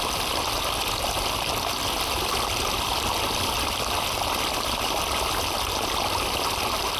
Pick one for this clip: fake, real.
real